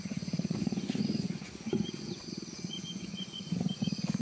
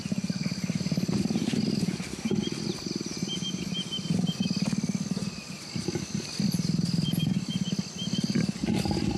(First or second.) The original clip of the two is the second